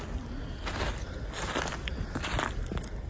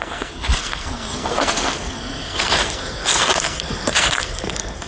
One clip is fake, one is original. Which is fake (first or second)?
second